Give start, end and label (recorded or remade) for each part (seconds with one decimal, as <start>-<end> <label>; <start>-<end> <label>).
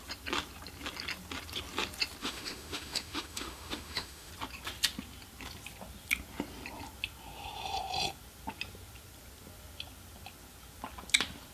0.0-2.2 recorded; 2.2-4.3 remade; 4.3-11.5 recorded